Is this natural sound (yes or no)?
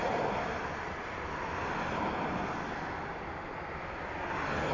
yes